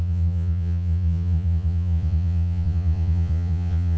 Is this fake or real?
fake